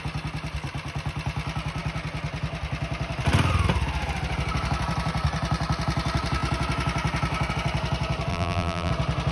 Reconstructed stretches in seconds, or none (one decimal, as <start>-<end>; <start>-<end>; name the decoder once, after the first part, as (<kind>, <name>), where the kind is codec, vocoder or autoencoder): 8.3-8.9 (vocoder, BigVGAN v2)